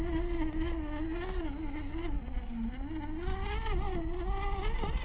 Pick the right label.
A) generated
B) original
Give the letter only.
B